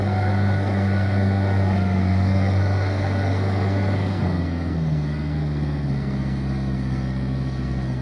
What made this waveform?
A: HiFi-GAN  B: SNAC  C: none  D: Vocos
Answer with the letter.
B